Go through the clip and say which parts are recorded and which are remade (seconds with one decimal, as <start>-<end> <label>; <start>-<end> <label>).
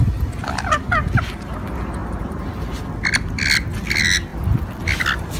0.0-2.0 recorded; 2.0-2.6 remade; 2.6-5.4 recorded